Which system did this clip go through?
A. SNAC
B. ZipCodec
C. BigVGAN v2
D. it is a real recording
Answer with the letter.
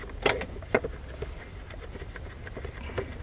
D